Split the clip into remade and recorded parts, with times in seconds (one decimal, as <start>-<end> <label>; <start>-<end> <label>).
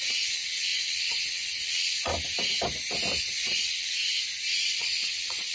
0.0-2.1 remade; 2.1-3.2 recorded; 3.2-4.0 remade; 4.0-4.6 recorded; 4.6-5.5 remade